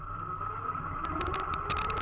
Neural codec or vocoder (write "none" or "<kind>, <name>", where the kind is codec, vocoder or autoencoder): none